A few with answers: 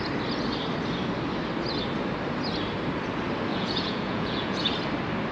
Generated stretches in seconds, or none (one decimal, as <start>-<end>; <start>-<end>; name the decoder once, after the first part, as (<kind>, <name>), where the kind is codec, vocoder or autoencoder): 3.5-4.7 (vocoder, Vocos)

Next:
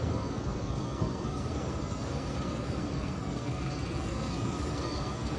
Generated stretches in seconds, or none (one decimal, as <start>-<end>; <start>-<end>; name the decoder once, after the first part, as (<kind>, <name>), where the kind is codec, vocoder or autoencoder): 0.0-5.4 (codec, SNAC)

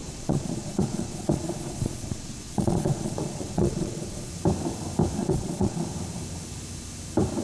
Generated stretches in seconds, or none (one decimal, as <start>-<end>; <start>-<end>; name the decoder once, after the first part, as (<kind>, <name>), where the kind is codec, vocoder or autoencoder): 0.0-4.3 (vocoder, Vocos); 5.2-5.8

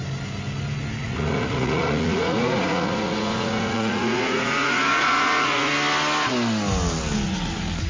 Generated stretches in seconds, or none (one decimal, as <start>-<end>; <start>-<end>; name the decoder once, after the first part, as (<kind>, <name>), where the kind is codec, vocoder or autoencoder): 1.0-5.7 (vocoder, Vocos)